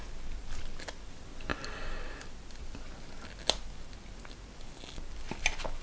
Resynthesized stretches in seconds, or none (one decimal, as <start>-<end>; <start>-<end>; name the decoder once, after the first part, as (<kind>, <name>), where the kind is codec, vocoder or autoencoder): none

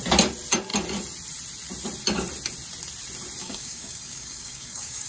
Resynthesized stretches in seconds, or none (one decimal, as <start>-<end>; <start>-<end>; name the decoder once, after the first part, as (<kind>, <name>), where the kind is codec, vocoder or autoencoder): 3.4-5.1 (codec, DAC)

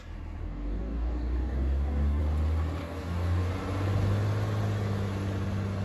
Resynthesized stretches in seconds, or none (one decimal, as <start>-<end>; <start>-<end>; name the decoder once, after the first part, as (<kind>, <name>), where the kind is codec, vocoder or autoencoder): 0.4-2.2 (codec, DAC); 2.8-3.5

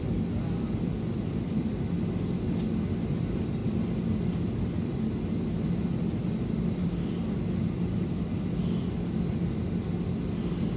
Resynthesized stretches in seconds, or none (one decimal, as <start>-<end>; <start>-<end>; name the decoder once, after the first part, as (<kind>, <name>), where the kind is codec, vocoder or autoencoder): none

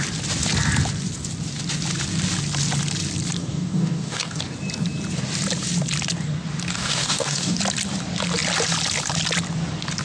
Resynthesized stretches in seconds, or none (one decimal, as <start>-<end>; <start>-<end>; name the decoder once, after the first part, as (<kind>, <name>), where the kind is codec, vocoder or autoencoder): 3.4-4.4 (codec, DAC); 6.7-7.6

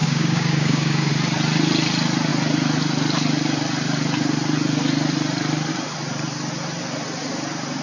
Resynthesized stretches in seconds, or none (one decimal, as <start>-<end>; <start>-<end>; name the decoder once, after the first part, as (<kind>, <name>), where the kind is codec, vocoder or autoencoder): 0.0-1.1 (codec, DAC)

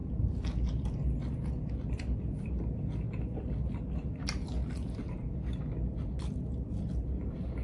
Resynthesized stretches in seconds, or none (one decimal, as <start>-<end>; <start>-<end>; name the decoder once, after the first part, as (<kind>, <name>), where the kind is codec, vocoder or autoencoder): none